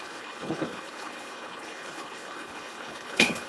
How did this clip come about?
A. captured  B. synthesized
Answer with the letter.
B